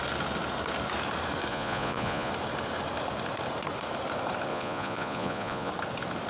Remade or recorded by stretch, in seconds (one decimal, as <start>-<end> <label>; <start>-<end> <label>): 0.0-1.5 recorded; 1.5-2.3 remade; 2.3-4.5 recorded; 4.5-5.7 remade; 5.7-6.3 recorded